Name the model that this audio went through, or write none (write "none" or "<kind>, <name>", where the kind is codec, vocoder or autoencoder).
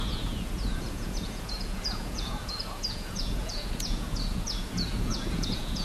vocoder, Vocos